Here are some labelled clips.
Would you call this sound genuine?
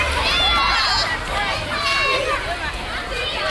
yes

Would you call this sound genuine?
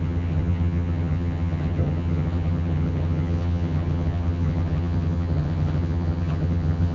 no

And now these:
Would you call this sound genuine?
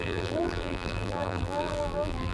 no